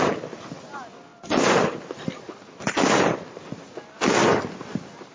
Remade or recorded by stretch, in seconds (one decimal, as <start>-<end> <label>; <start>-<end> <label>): 0.0-5.1 recorded

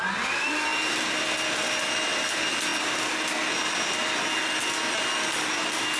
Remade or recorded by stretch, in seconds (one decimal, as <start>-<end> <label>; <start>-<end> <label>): 0.0-6.0 recorded

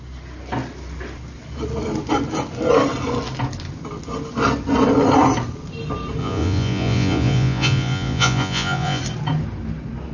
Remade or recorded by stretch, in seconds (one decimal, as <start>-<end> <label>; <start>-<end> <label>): 0.0-6.2 recorded; 6.2-9.0 remade; 9.0-10.1 recorded

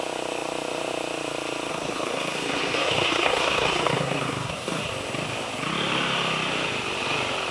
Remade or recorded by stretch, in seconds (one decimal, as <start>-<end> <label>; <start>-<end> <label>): 0.0-1.7 recorded; 1.7-4.9 remade; 4.9-7.5 recorded